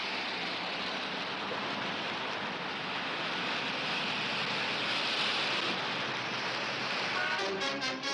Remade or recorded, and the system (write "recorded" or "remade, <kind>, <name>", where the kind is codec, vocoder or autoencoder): recorded